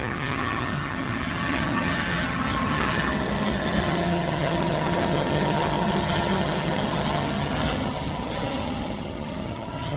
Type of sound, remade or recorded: remade